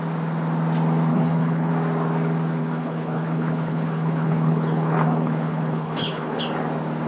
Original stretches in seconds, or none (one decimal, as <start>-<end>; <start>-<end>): 0.0-1.1; 1.7-2.6; 6.4-7.1